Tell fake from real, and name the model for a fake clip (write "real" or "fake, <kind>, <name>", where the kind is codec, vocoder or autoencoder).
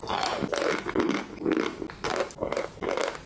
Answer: real